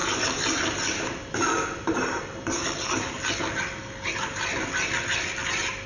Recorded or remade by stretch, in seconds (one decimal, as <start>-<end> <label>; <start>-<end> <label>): 0.0-5.9 recorded